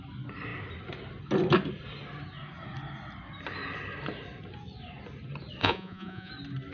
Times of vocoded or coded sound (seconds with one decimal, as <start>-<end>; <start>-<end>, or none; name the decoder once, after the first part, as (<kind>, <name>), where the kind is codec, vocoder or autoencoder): 5.6-6.3 (vocoder, Vocos)